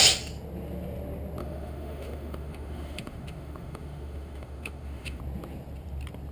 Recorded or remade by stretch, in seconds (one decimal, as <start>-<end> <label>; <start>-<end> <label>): 0.0-1.4 recorded; 1.4-5.2 remade; 5.2-6.3 recorded